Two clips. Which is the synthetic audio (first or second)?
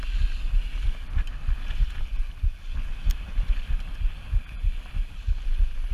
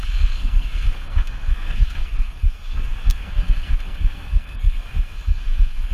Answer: second